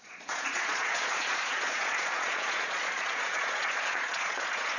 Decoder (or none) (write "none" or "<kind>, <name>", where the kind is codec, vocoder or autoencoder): vocoder, Vocos